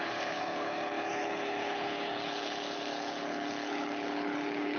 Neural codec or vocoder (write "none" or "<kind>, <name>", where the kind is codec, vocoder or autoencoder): codec, HILCodec